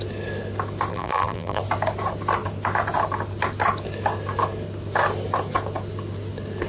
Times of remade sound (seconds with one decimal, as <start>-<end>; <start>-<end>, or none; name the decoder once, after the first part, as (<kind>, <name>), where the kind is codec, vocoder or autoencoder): 0.9-1.6 (vocoder, BigVGAN v2)